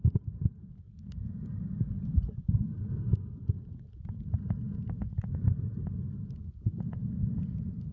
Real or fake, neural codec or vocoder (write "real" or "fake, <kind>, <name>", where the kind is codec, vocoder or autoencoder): real